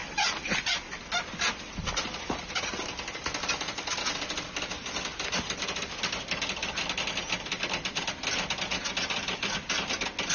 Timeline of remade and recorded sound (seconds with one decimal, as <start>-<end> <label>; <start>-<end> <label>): 0.0-10.3 recorded